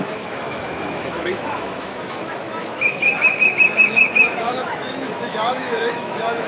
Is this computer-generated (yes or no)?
yes